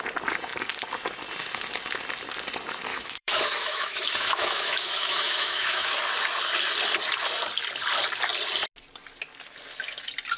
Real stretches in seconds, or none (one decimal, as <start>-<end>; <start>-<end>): 0.0-2.9; 5.9-10.4